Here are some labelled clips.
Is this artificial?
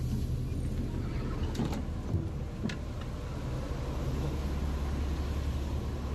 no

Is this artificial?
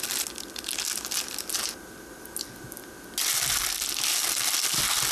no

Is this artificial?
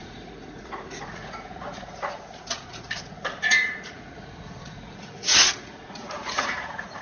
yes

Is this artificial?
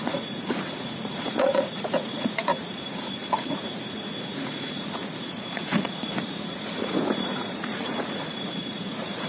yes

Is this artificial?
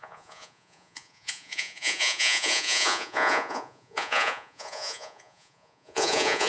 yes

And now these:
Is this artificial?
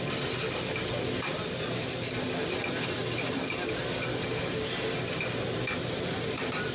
no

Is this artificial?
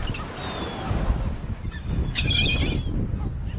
no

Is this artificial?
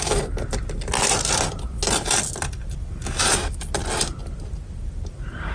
no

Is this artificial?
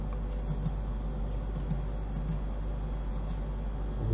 no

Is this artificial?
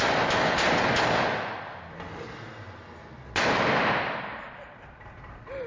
no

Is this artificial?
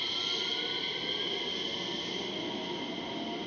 no